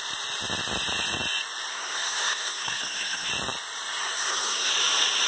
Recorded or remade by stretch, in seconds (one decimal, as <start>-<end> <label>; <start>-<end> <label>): 0.0-1.7 recorded; 1.7-3.3 remade; 3.3-4.0 recorded; 4.0-4.7 remade; 4.7-5.3 recorded